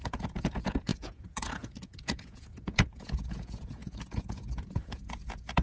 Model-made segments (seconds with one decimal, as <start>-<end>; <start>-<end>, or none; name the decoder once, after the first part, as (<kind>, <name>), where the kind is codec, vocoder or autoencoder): 0.0-5.6 (vocoder, Vocos)